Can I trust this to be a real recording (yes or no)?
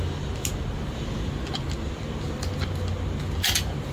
yes